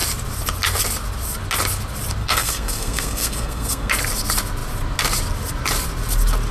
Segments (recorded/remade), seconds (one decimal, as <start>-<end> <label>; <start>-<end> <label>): 0.0-2.2 recorded; 2.2-3.9 remade; 3.9-6.5 recorded